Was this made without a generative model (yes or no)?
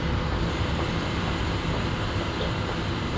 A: yes